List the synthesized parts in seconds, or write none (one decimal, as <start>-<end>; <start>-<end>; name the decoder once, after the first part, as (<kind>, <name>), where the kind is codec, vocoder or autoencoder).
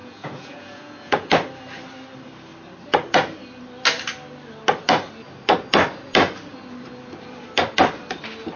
0.0-1.3 (vocoder, Vocos)